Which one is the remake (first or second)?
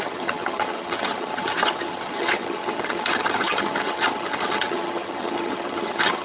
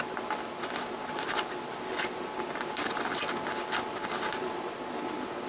first